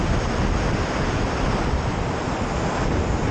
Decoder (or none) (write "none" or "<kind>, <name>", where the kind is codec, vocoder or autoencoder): none